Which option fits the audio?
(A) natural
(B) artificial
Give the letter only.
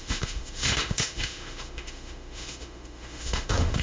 B